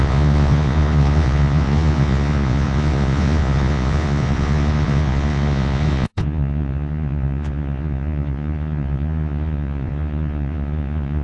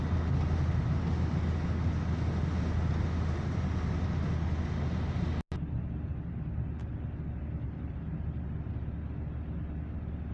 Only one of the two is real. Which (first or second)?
second